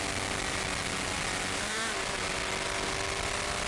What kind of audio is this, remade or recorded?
recorded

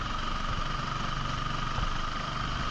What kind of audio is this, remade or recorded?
recorded